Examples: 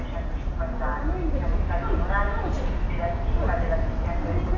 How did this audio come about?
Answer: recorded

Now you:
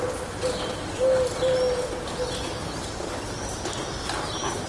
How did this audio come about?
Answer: recorded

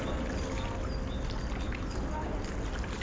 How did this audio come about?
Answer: recorded